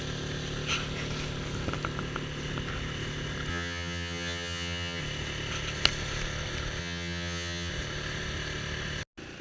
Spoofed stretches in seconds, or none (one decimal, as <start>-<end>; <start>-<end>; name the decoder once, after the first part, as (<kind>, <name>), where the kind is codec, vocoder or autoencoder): 3.5-5.0 (vocoder, HiFi-GAN); 6.8-7.7